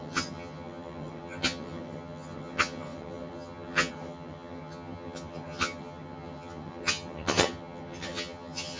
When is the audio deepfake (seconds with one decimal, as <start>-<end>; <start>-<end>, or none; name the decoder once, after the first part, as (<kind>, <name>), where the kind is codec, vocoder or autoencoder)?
0.0-8.8 (vocoder, HiFi-GAN)